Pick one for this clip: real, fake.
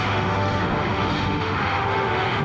fake